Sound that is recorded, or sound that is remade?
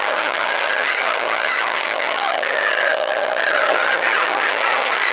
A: remade